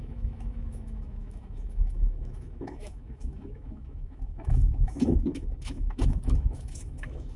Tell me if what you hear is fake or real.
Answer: fake